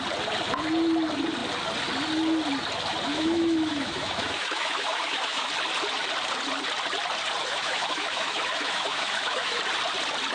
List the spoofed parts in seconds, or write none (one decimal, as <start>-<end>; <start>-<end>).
3.1-5.5; 7.4-9.6